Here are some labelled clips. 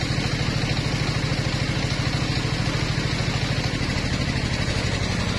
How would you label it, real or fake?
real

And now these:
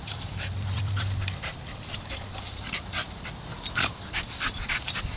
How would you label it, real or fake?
fake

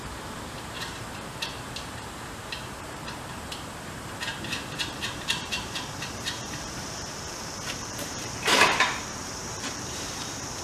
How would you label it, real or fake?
fake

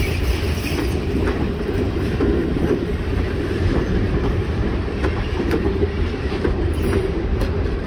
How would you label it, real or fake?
fake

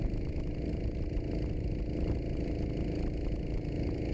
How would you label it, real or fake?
real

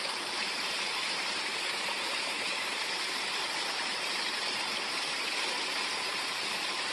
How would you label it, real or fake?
fake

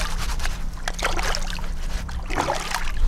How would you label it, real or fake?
real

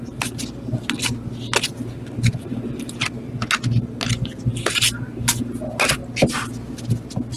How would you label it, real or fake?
real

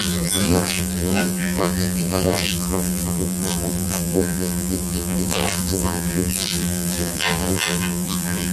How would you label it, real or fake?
fake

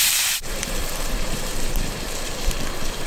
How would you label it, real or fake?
fake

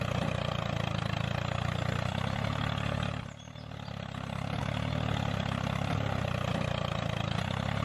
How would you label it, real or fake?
real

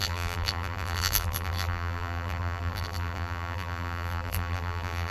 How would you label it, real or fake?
fake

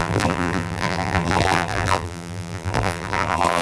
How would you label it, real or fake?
fake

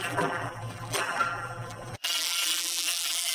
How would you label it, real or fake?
fake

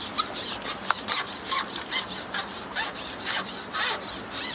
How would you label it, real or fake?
real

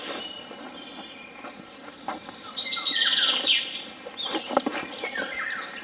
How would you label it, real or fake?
fake